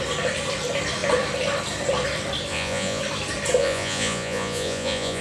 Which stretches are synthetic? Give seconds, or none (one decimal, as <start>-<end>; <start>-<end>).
2.5-3.0; 3.6-5.2